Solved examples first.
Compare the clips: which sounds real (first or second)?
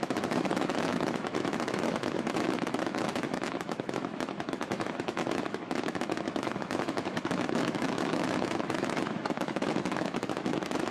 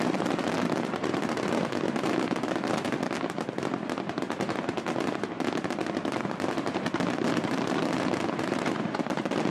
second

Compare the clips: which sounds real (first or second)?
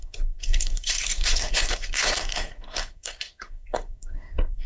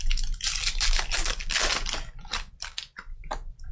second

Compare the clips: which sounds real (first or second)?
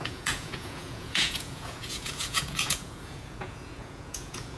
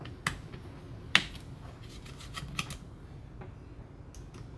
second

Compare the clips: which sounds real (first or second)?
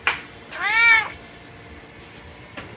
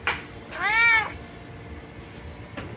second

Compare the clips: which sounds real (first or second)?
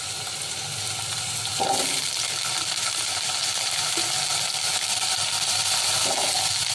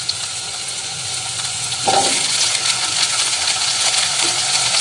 first